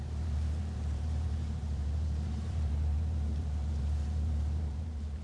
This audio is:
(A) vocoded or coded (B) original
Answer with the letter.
A